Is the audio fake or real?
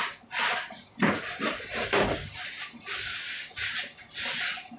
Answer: real